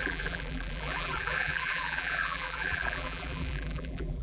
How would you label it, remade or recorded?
remade